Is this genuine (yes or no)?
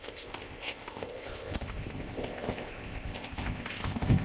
no